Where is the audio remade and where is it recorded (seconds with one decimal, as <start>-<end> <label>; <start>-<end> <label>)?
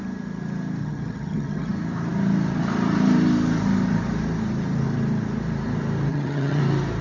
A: 0.0-0.8 recorded; 0.8-1.7 remade; 1.7-6.1 recorded; 6.1-6.6 remade; 6.6-7.0 recorded